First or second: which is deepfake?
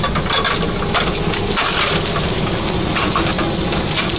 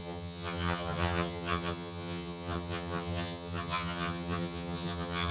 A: second